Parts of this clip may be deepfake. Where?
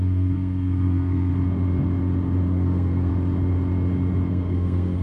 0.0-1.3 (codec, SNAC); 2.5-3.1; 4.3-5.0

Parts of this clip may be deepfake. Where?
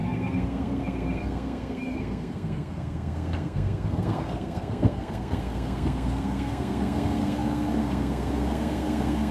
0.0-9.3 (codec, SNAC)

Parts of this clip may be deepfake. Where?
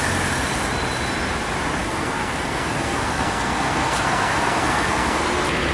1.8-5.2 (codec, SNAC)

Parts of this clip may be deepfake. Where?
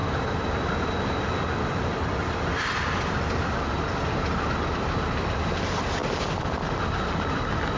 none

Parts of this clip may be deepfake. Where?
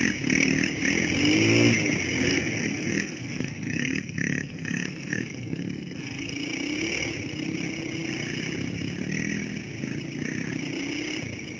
2.3-6.3 (codec, SNAC)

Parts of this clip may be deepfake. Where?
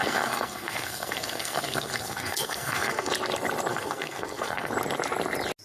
0.0-3.1 (codec, SNAC); 3.7-4.7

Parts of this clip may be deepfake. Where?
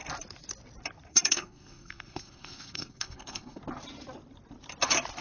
1.1-3.6 (codec, SNAC)